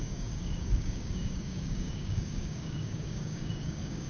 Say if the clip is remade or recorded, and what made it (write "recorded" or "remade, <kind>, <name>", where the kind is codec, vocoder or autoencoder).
remade, codec, DAC